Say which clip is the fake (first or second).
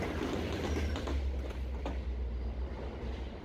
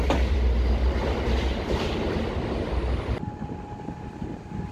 second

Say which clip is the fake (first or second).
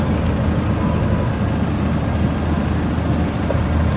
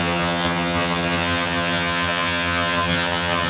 second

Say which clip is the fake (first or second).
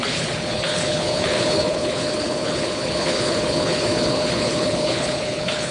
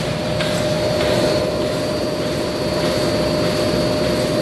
first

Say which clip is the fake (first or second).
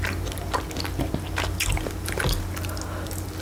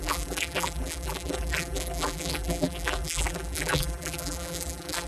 second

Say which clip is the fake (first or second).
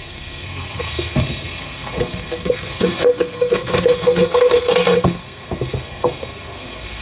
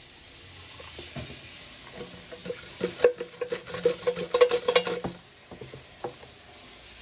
first